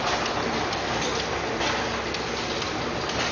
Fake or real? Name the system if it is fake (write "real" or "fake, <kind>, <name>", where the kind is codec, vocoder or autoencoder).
real